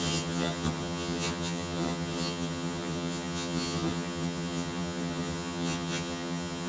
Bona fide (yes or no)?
no